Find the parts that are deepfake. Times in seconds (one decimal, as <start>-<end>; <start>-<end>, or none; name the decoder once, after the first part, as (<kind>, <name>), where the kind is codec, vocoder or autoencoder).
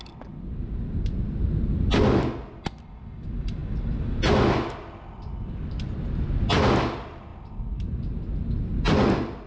none